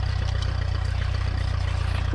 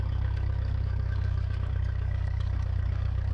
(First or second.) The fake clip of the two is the second